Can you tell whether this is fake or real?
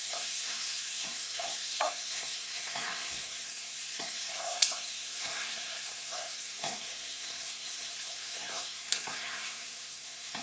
fake